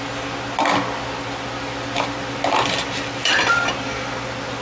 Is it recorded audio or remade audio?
recorded